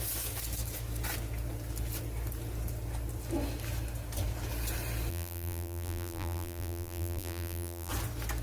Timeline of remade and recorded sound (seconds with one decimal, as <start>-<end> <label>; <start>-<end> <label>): 0.0-5.1 recorded; 5.1-7.9 remade; 7.9-8.4 recorded